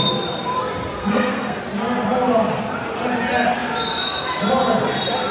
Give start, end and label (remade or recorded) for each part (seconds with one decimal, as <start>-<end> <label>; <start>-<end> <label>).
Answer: 0.0-1.0 recorded; 1.0-1.6 remade; 1.6-5.3 recorded